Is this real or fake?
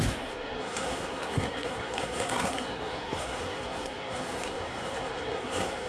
fake